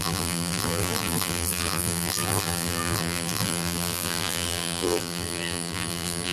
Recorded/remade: remade